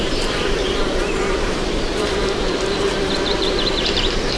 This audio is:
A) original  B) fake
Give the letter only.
B